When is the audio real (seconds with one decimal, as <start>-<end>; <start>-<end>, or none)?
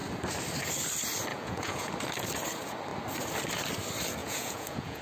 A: 0.0-1.3; 1.9-4.2